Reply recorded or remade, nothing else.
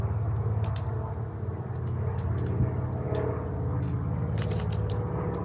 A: recorded